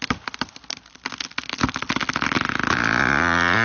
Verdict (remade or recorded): recorded